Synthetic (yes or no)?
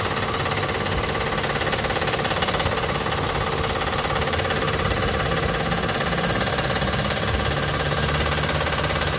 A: no